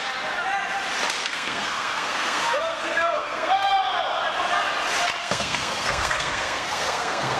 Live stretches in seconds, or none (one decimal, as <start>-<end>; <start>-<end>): 0.0-1.2; 3.7-5.2